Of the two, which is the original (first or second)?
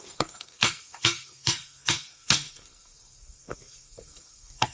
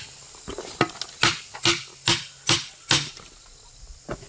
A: second